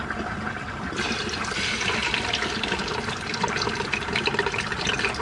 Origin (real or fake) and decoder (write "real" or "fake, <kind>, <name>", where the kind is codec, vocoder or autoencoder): fake, vocoder, BigVGAN v2